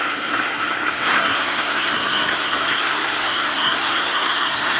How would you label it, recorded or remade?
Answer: remade